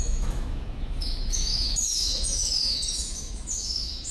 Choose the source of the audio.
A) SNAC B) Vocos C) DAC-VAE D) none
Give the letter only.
C